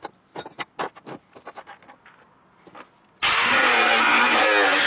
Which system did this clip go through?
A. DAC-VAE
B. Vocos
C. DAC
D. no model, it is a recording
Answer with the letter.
D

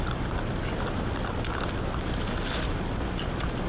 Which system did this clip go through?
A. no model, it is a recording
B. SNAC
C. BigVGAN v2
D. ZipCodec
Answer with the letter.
A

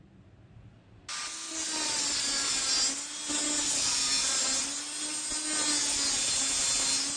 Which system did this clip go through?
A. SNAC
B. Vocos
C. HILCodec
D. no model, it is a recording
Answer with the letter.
D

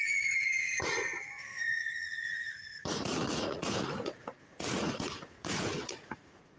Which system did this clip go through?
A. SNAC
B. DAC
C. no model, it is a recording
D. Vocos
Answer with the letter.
D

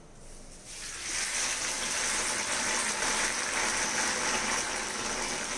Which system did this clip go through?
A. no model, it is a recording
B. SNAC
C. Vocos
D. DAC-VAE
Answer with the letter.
A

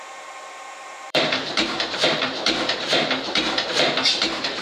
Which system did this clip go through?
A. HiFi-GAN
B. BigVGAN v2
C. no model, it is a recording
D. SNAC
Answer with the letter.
B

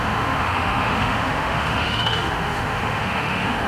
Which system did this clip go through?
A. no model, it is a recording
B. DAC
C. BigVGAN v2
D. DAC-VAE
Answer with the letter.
D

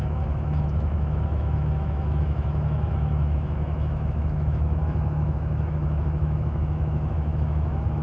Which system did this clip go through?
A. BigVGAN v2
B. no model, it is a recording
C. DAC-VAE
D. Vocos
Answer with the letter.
C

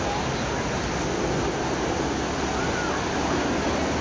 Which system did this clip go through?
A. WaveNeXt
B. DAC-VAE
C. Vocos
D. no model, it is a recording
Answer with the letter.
D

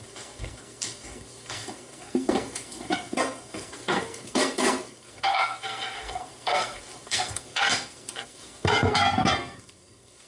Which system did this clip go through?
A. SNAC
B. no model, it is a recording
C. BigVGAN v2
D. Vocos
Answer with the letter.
A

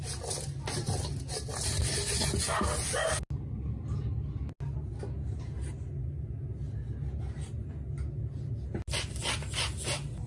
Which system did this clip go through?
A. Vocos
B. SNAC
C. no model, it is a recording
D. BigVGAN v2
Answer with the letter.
C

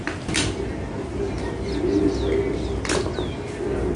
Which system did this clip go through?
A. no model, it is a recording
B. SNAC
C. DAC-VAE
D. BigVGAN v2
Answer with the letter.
A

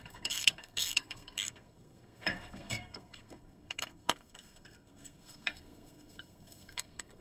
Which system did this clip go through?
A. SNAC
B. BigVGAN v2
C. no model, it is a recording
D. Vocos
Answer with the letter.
A